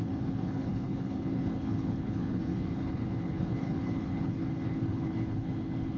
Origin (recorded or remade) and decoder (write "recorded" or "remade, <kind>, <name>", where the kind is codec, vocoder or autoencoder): remade, codec, HILCodec